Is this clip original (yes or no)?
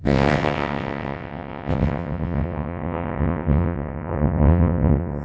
no